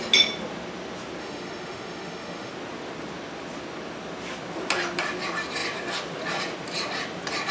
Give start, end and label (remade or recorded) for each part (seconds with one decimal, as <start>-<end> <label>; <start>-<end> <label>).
0.0-1.2 recorded; 1.2-2.5 remade; 2.5-7.5 recorded